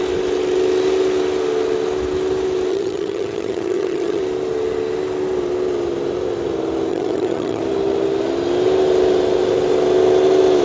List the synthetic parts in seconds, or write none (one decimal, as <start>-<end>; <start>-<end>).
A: 2.7-4.2; 6.9-7.6